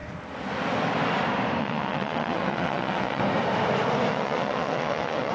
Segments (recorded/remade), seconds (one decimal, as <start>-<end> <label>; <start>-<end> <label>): 0.0-1.6 recorded; 1.6-3.2 remade; 3.2-4.1 recorded; 4.1-5.3 remade